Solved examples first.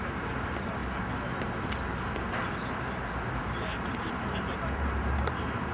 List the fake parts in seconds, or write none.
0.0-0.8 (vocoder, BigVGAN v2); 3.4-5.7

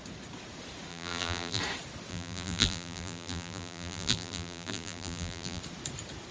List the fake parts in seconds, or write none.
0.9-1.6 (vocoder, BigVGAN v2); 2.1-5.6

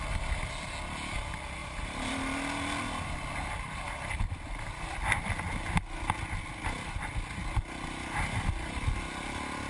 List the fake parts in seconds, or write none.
1.6-2.1 (vocoder, BigVGAN v2)